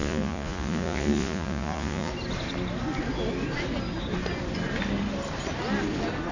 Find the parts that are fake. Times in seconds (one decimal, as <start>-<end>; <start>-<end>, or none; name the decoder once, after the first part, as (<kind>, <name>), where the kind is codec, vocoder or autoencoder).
0.0-2.1 (vocoder, Vocos)